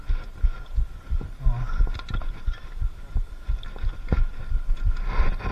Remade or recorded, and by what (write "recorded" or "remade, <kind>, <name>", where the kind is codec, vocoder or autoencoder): recorded